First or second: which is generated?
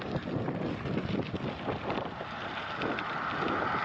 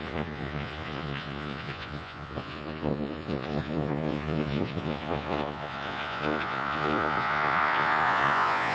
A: second